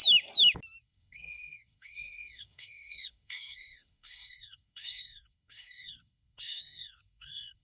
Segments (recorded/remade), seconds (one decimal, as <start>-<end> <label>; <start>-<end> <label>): 0.0-0.8 recorded; 0.8-7.6 remade